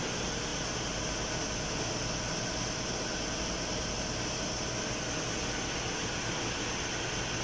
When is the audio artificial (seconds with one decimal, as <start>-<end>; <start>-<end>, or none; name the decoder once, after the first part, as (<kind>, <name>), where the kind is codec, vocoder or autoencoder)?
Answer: none

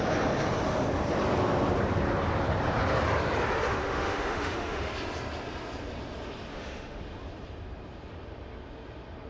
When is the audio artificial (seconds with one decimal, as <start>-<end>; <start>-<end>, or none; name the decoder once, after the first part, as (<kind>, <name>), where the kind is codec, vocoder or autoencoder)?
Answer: 3.6-4.9 (autoencoder, DAC-VAE); 6.5-7.0

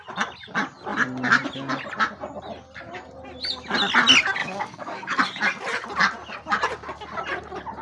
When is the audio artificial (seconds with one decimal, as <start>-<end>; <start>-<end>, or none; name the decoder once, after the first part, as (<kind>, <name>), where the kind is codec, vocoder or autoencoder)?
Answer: 4.4-5.2 (codec, DAC)

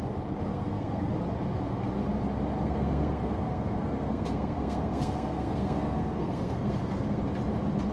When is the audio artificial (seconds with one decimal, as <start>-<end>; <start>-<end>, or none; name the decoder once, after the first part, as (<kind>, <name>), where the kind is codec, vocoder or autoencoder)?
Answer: 0.5-1.1 (codec, SNAC); 2.6-7.2

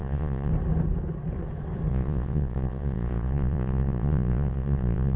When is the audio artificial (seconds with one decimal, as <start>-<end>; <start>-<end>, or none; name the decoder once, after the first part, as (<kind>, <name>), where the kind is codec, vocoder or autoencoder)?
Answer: 0.0-0.5 (vocoder, Vocos); 1.9-5.2

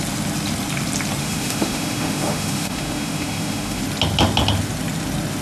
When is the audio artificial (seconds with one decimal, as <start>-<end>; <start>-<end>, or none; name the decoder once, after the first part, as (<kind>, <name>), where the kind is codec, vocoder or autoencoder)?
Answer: 1.2-3.8 (autoencoder, DAC-VAE)

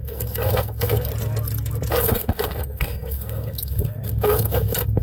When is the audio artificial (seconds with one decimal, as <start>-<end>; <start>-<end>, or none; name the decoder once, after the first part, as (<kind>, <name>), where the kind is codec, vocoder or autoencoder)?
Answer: 0.0-1.1 (codec, SNAC); 1.9-5.0

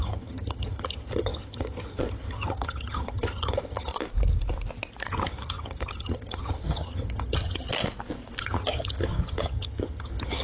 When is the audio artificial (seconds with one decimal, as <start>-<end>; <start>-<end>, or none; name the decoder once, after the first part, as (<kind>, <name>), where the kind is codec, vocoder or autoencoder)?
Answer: 0.0-3.9 (vocoder, HiFi-GAN); 5.1-7.7; 8.4-10.4